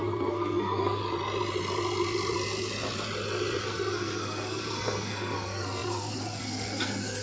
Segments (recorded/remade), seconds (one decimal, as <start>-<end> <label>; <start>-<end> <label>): 0.0-1.0 remade; 1.0-3.6 recorded; 3.6-7.2 remade